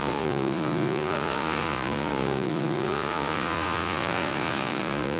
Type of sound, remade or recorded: remade